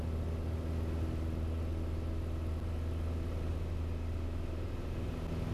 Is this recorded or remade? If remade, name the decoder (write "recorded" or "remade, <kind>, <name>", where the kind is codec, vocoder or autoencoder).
recorded